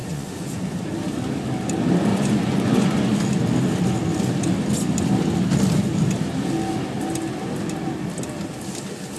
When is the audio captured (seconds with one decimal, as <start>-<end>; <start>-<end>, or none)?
0.6-2.1; 3.2-9.2